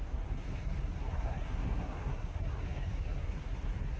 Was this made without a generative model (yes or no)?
no